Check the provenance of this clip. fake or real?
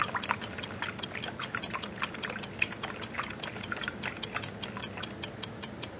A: real